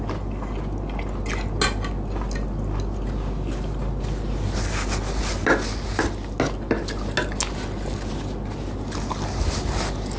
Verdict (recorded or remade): recorded